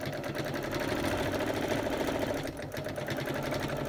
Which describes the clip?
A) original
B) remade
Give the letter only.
A